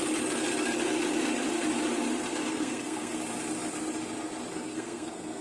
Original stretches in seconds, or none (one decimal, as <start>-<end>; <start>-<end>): 0.0-2.5; 3.2-4.5